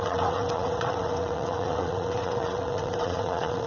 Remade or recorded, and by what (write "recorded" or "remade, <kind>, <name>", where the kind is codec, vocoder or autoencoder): remade, vocoder, WaveNeXt